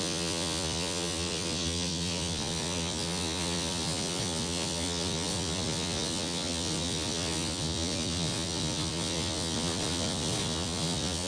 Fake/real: fake